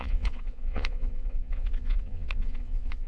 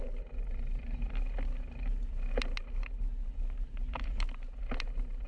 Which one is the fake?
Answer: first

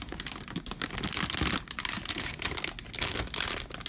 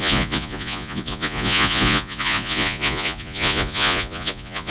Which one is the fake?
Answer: second